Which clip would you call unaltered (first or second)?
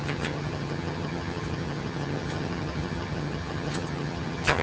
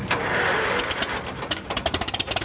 second